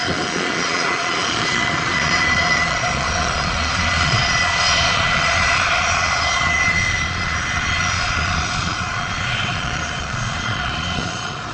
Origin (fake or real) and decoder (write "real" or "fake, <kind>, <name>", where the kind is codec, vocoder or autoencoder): fake, vocoder, Vocos